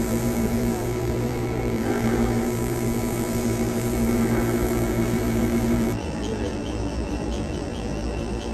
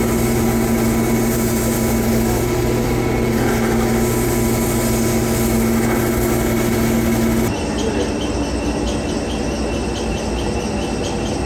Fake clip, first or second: first